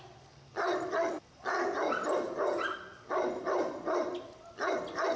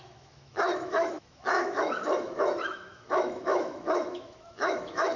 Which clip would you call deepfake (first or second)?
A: second